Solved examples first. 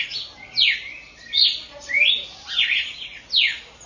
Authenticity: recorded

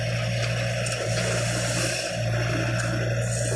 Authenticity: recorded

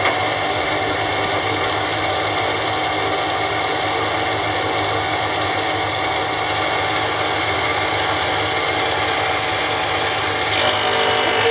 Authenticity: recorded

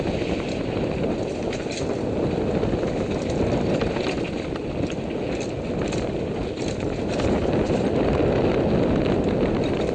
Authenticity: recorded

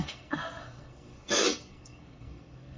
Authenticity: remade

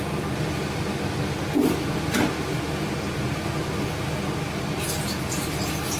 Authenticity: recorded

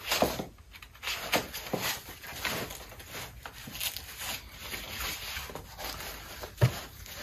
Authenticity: recorded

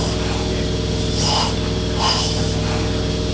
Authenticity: recorded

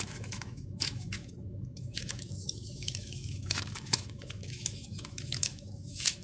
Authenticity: remade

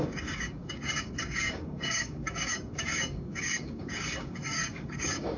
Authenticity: remade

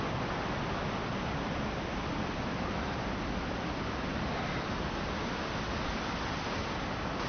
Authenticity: recorded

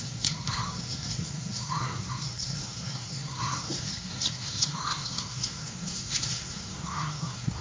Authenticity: remade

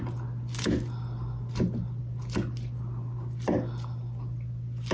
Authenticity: recorded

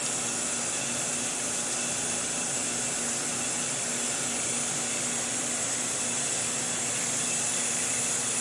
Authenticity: recorded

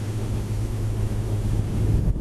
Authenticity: remade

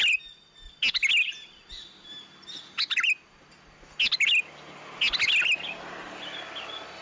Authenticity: recorded